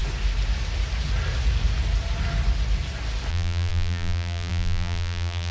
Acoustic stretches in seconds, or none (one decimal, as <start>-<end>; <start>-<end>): 0.0-3.3